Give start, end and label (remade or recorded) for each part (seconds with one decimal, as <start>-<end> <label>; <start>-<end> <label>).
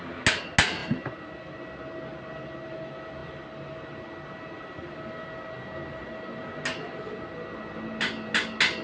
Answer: 0.0-8.8 recorded